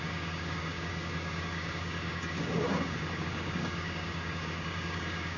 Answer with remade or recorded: remade